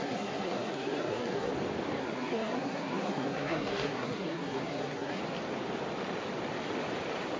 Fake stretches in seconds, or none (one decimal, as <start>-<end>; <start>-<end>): 0.0-1.5; 2.0-5.2